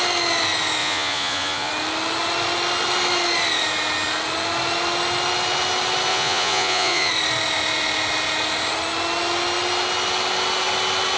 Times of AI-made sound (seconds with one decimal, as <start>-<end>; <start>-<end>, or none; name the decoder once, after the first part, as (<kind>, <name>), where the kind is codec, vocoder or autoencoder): 0.8-1.7 (vocoder, Vocos); 6.1-7.1